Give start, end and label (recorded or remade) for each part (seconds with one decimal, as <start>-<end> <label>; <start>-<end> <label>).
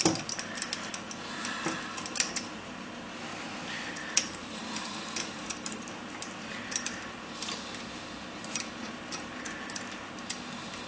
0.0-3.3 recorded; 3.3-5.9 remade; 5.9-10.9 recorded